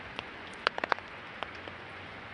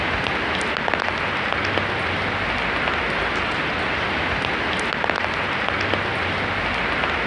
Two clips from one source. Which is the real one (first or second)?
second